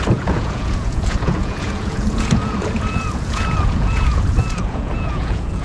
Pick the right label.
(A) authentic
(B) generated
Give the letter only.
B